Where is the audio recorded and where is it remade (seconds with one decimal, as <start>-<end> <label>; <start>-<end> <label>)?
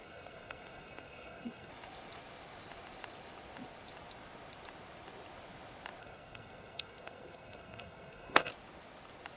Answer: 0.0-1.7 remade; 1.7-6.0 recorded; 6.0-8.5 remade; 8.5-9.4 recorded